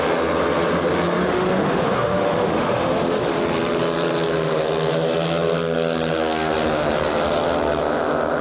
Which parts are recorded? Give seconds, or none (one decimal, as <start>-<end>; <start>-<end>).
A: 0.0-1.3; 3.4-8.4